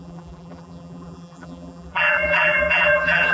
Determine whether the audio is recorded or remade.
remade